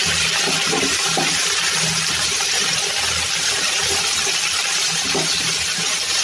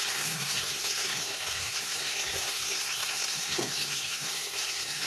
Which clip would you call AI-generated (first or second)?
second